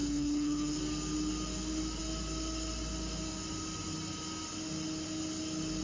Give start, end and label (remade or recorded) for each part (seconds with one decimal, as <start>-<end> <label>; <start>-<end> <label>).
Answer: 0.0-0.8 remade; 0.8-5.8 recorded